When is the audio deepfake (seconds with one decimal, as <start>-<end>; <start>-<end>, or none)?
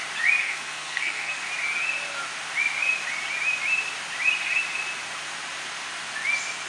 0.4-1.4